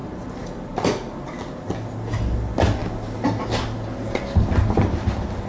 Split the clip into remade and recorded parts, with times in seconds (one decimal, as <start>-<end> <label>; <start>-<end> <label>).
0.0-5.5 recorded